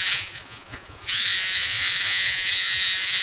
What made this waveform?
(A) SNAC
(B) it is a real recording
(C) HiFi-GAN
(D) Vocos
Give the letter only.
D